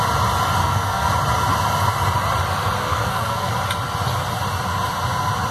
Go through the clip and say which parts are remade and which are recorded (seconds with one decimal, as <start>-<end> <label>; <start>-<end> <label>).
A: 0.0-0.6 recorded; 0.6-1.1 remade; 1.1-2.8 recorded; 2.8-3.5 remade; 3.5-5.5 recorded